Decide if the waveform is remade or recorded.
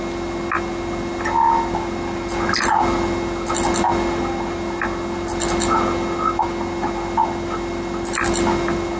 recorded